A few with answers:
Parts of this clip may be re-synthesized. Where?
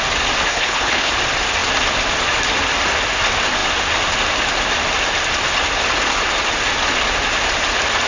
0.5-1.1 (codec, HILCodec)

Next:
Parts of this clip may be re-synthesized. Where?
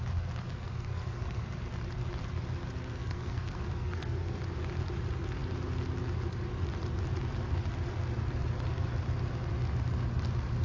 0.5-1.4 (codec, SNAC); 3.0-4.4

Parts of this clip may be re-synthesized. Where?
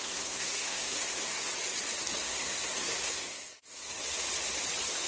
0.0-1.5 (codec, SNAC); 2.2-4.0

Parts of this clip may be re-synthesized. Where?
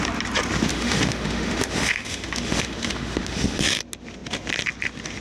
0.7-3.8 (autoencoder, DAC-VAE)